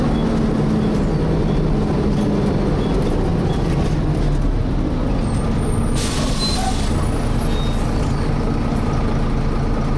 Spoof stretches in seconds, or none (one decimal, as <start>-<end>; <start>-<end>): none